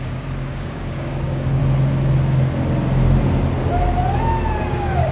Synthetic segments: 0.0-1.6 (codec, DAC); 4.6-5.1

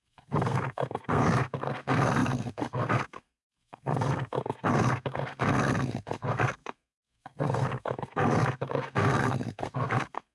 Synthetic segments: 0.0-10.3 (codec, SNAC)

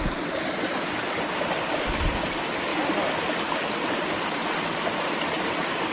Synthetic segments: none

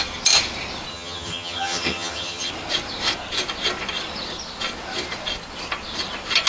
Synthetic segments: 0.9-2.5 (vocoder, HiFi-GAN)